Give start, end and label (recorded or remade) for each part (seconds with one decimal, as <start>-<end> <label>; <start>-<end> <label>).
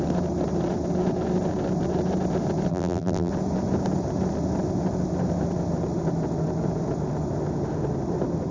0.0-2.7 recorded; 2.7-3.3 remade; 3.3-8.5 recorded